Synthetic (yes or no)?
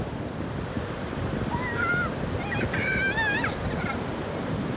no